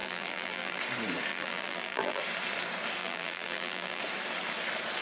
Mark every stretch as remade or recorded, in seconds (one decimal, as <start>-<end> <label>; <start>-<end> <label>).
0.0-0.8 remade; 0.8-1.3 recorded; 1.3-2.2 remade; 2.2-3.0 recorded; 3.0-4.0 remade; 4.0-5.0 recorded

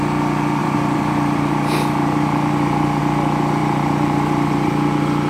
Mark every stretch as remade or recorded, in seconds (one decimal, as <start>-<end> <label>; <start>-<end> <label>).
0.0-0.6 recorded; 0.6-3.0 remade; 3.0-3.6 recorded; 3.6-4.7 remade; 4.7-5.3 recorded

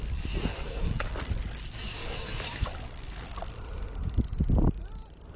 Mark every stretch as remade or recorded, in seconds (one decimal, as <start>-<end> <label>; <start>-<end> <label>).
0.0-0.6 recorded; 0.6-3.4 remade; 3.4-5.4 recorded

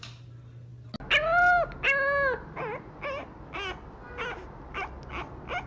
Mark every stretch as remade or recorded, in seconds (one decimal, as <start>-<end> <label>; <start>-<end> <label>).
0.0-5.7 recorded

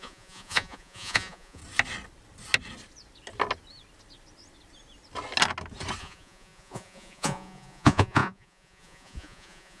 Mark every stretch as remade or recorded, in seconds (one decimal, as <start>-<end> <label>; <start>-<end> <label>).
0.0-1.6 remade; 1.6-6.0 recorded; 6.0-9.8 remade